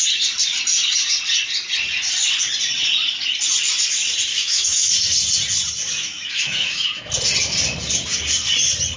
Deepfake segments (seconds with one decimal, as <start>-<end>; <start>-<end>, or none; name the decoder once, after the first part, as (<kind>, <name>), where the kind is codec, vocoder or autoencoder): 4.3-4.9 (autoencoder, DAC-VAE); 6.0-7.1